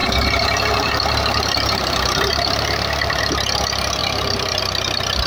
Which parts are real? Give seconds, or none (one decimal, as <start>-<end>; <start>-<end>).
3.2-4.0; 4.6-5.3